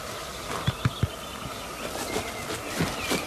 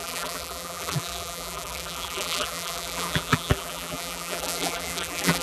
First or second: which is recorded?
first